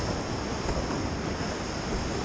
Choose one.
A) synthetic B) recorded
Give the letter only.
B